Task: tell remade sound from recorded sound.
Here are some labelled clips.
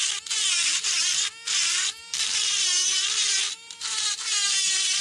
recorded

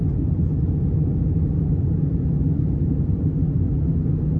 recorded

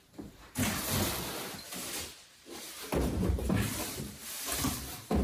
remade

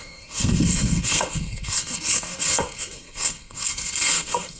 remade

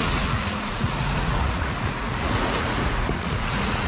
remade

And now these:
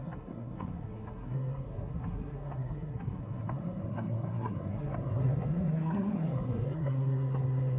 remade